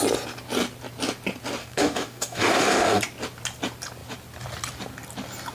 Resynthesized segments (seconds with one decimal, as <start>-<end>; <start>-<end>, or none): 1.6-3.0